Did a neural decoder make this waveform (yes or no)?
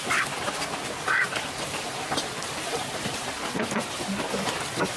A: no